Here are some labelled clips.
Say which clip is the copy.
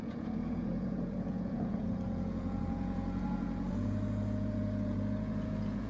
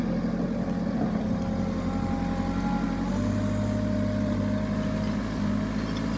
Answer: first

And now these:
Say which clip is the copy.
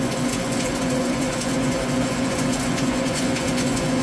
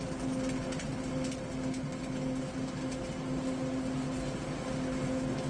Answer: first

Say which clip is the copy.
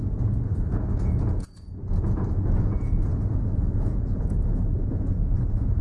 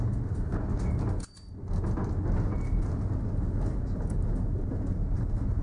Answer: first